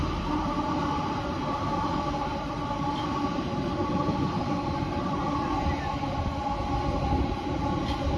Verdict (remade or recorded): recorded